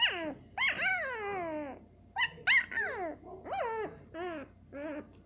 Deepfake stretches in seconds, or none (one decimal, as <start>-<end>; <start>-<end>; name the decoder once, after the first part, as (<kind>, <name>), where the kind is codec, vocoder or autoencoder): none